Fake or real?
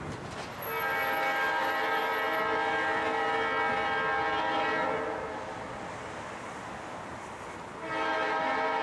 real